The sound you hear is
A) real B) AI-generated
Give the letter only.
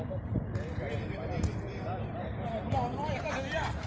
A